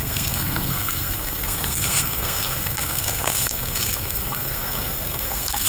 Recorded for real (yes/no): no